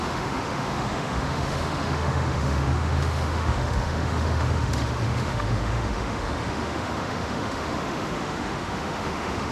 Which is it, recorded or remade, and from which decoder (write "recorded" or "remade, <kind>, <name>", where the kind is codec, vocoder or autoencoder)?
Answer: remade, autoencoder, DAC-VAE